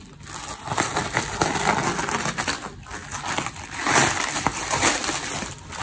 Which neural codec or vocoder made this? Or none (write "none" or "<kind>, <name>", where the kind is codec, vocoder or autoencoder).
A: none